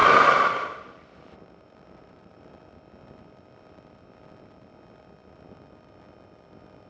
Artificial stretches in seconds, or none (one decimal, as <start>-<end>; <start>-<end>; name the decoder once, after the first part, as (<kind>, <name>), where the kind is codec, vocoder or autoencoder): 0.0-2.5 (vocoder, BigVGAN v2)